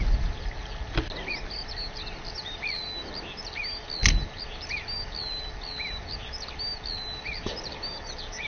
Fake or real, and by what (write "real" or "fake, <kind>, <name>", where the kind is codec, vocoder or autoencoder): real